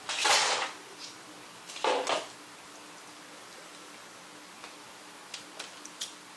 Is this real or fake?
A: real